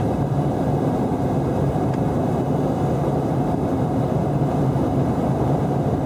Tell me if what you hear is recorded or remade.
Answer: remade